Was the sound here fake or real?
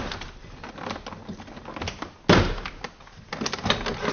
real